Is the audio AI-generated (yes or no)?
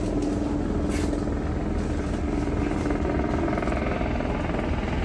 no